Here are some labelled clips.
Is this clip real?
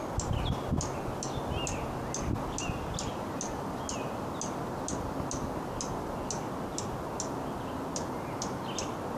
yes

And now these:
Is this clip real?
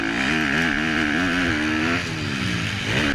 yes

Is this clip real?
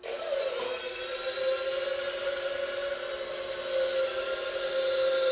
yes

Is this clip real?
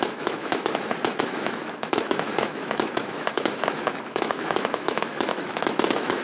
no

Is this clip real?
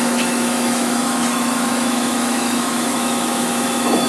no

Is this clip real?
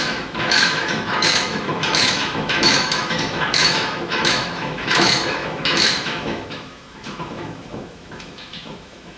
no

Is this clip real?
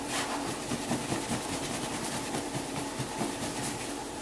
yes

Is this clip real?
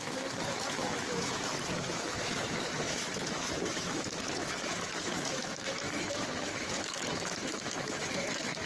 no